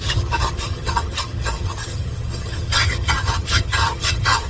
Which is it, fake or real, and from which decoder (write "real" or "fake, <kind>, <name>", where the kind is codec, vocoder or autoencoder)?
fake, vocoder, HiFi-GAN